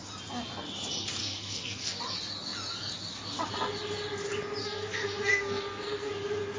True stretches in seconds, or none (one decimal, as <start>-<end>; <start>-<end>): 0.0-1.2; 2.0-4.6; 6.1-6.6

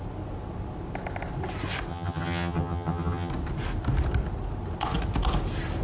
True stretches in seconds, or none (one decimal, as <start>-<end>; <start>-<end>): 0.0-1.9; 3.3-5.8

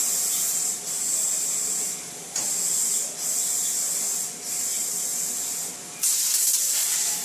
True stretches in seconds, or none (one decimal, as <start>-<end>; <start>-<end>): 2.9-7.2

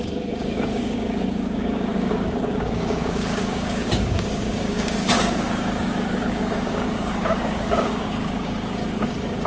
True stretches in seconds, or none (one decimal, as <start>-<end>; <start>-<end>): none